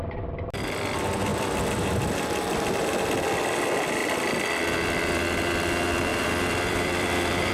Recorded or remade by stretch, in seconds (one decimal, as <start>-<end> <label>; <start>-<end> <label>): 0.0-1.3 recorded; 1.3-2.9 remade; 2.9-6.1 recorded; 6.1-7.5 remade